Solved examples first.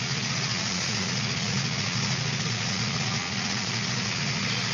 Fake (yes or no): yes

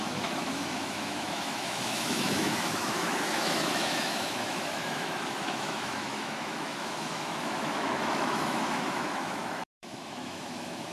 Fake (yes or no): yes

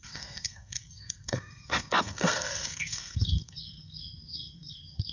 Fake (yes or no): yes